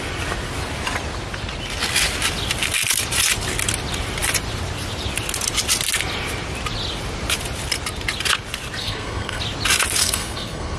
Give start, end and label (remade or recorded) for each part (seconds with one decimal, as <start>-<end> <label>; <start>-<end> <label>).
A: 0.0-8.8 recorded; 8.8-9.4 remade; 9.4-10.0 recorded; 10.0-10.8 remade